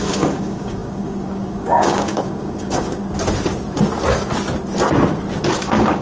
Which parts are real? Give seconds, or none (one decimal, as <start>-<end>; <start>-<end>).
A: 3.0-5.6